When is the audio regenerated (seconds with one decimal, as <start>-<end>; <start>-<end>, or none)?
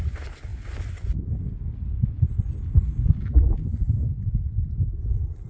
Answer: none